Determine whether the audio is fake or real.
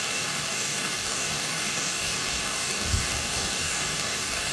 fake